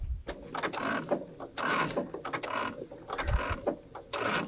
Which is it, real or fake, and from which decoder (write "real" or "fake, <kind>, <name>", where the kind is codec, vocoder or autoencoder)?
real